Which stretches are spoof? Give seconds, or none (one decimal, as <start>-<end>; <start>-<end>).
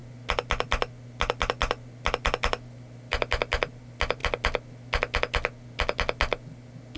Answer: none